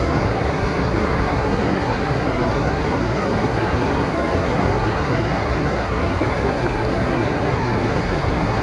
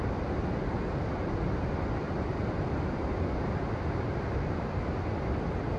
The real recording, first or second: second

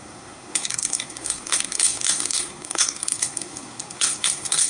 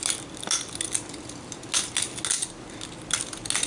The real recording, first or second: second